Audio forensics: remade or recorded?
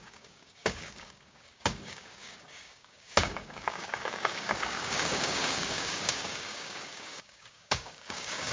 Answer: remade